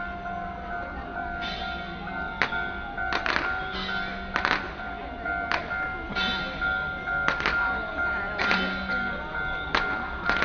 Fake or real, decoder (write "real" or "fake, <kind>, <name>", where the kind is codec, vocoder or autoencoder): real